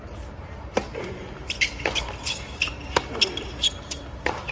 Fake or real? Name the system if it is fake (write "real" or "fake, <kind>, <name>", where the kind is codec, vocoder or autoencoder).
fake, vocoder, BigVGAN v2